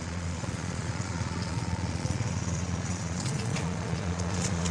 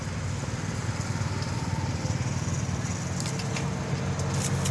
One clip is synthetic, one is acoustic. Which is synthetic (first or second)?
first